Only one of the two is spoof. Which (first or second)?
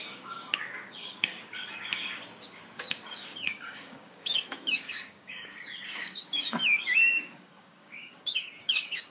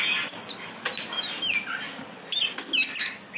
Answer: first